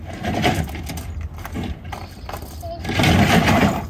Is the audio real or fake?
real